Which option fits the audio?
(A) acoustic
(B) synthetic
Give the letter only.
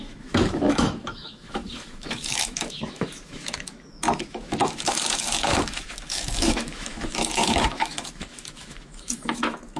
B